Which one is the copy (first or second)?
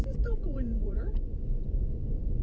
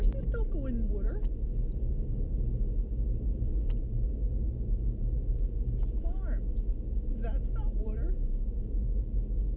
first